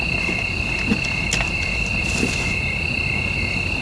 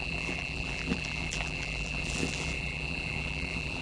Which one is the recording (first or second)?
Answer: first